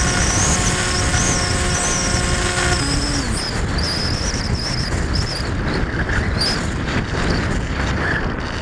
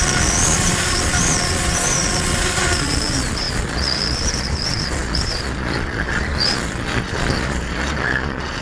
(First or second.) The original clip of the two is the first